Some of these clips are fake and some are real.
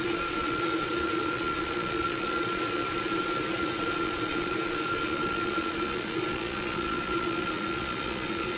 fake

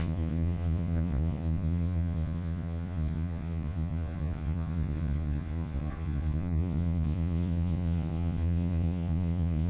fake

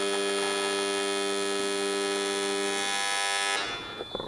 real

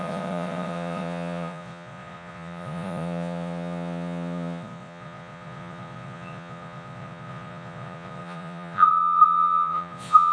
fake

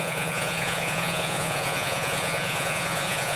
fake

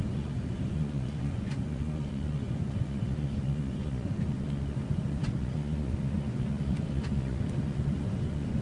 fake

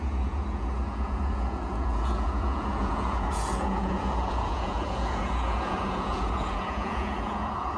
fake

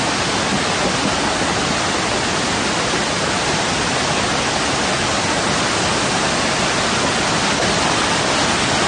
real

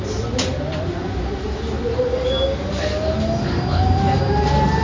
real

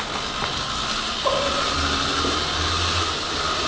real